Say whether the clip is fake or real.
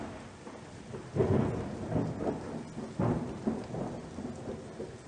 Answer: real